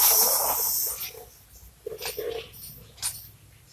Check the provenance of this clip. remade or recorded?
recorded